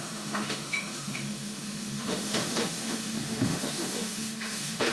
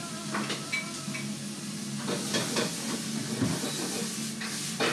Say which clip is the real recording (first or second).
second